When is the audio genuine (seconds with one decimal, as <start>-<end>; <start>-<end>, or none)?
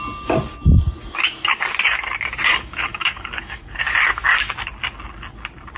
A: 0.0-2.5; 3.8-5.8